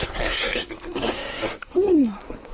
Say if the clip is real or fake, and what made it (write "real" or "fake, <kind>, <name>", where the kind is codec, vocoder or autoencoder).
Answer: fake, codec, SNAC